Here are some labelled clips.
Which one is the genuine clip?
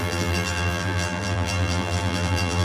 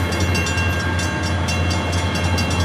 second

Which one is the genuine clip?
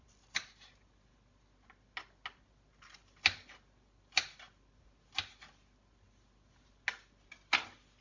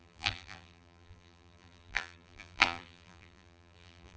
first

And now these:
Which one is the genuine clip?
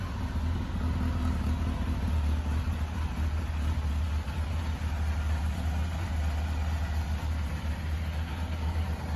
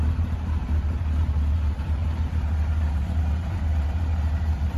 first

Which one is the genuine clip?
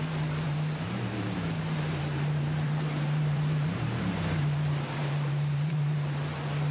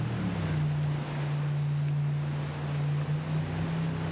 second